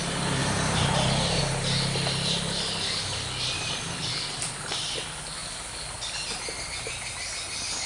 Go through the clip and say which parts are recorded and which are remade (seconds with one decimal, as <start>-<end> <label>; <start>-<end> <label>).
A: 0.0-0.4 recorded; 0.4-1.4 remade; 1.4-7.9 recorded